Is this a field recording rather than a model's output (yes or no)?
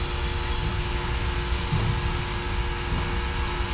yes